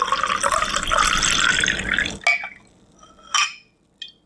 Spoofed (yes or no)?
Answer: no